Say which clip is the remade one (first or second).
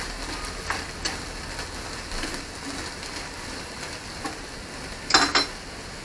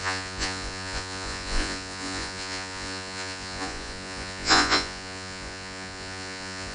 second